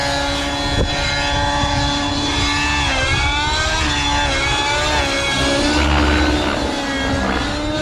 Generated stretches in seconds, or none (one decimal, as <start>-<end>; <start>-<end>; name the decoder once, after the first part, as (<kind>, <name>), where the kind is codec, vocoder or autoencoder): none